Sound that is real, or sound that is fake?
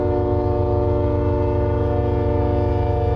real